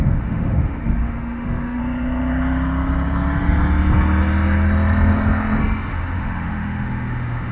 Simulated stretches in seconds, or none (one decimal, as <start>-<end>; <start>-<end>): 0.0-1.8; 5.9-7.5